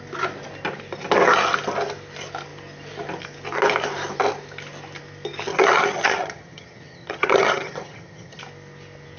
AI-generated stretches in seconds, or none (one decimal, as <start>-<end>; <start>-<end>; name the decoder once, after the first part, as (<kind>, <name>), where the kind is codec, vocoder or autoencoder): 5.5-8.4 (vocoder, HiFi-GAN)